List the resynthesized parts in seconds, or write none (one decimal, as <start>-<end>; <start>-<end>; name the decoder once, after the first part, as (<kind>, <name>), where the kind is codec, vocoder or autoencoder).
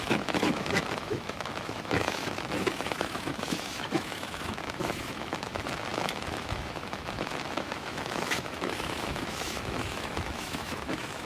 0.0-11.3 (autoencoder, DAC-VAE)